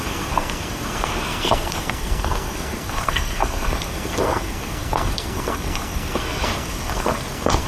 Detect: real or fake fake